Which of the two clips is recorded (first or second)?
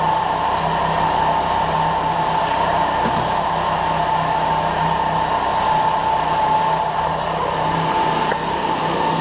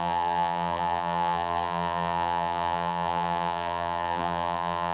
first